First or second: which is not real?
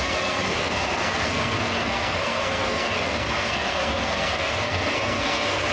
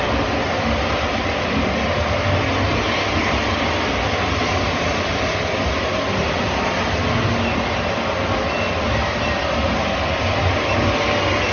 first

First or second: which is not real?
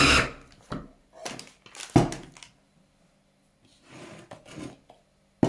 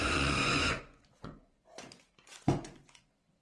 second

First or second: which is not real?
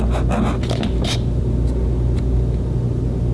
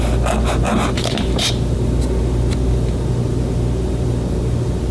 second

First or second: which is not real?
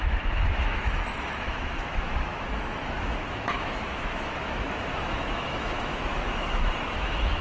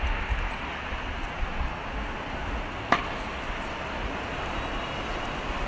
first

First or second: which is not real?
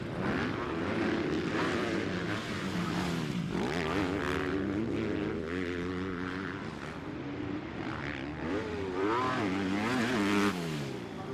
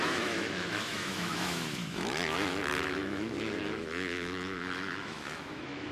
second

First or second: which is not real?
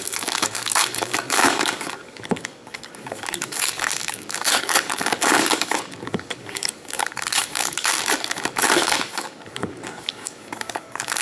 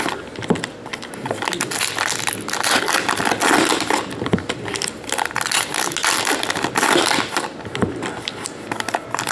first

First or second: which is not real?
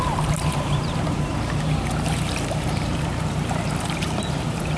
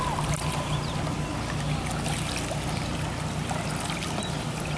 first